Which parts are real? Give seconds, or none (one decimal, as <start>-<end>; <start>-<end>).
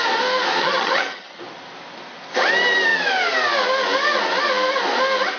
0.0-0.6; 1.4-5.4